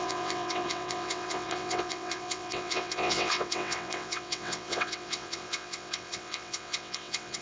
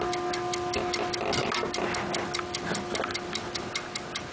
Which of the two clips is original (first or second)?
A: second